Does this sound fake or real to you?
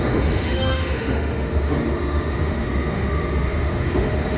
fake